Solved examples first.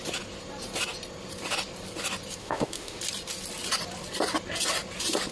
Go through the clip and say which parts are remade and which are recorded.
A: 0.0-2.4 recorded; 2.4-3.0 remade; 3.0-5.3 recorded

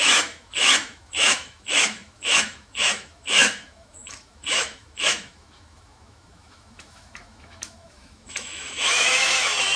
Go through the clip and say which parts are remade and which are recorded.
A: 0.0-9.8 remade

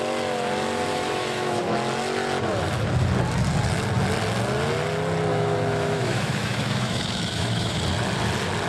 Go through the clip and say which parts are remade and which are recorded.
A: 0.0-0.9 recorded; 0.9-1.6 remade; 1.6-5.3 recorded; 5.3-7.8 remade; 7.8-8.7 recorded

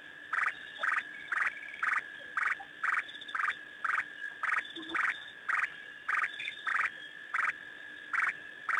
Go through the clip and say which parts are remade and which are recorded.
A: 0.0-8.8 recorded

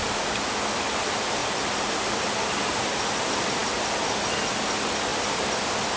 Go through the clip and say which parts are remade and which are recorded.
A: 0.0-6.0 recorded

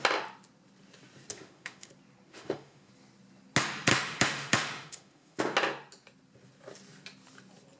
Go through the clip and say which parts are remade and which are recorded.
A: 0.0-1.3 recorded; 1.3-1.9 remade; 1.9-2.3 recorded; 2.3-2.9 remade; 2.9-3.9 recorded; 3.9-5.4 remade; 5.4-7.8 recorded

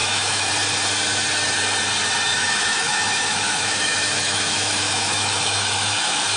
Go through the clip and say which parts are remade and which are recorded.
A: 0.0-0.5 remade; 0.5-2.3 recorded; 2.3-6.4 remade